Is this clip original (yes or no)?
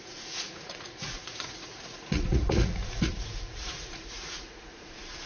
no